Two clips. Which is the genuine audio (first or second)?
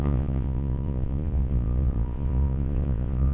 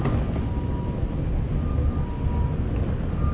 second